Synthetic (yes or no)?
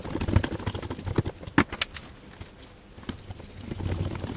no